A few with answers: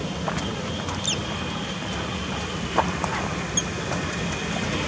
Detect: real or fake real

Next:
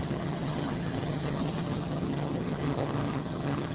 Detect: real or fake fake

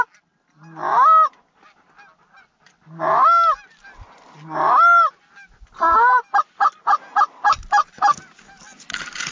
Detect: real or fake real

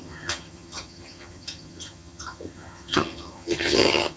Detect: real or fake fake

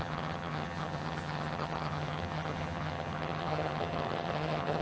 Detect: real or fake fake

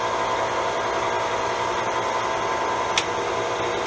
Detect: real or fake real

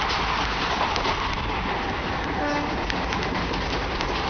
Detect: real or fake real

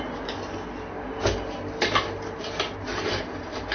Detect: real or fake real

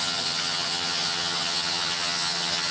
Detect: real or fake fake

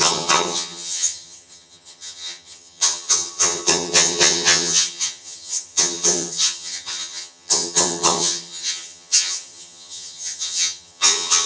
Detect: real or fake fake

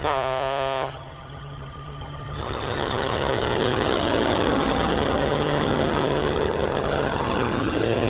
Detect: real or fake fake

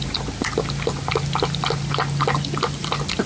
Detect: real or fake real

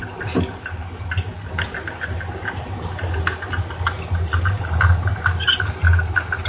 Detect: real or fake real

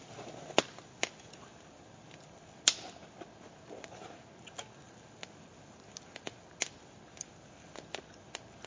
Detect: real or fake real